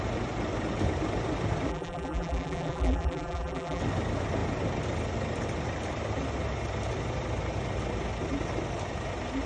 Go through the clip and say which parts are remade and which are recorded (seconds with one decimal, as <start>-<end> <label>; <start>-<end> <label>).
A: 0.0-1.7 recorded; 1.7-3.8 remade; 3.8-9.5 recorded